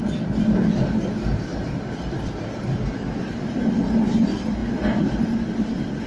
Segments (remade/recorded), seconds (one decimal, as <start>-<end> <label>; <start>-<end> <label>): 0.0-6.1 recorded